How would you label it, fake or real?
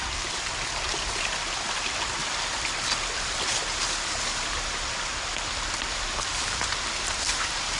real